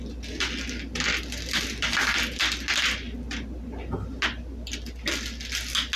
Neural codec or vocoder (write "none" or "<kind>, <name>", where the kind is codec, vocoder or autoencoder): none